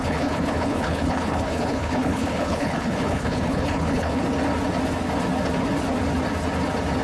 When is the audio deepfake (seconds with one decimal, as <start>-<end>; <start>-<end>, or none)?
0.0-4.2